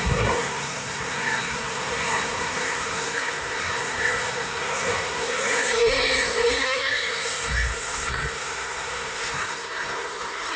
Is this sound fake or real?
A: fake